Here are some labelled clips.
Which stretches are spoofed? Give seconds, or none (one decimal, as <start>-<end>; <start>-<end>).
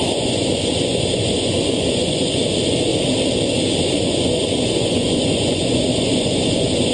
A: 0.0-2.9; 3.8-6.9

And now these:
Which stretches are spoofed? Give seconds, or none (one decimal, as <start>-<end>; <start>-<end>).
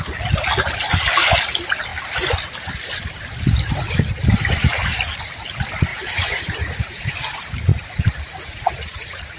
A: 5.9-7.1; 7.7-9.4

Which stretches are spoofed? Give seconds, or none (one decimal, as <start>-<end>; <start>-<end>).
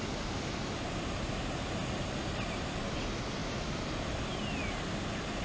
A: none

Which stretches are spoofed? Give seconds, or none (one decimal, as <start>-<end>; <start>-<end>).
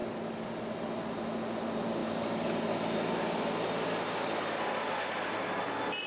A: none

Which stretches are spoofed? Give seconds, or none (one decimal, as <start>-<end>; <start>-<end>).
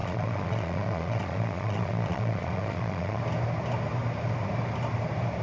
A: 0.0-3.2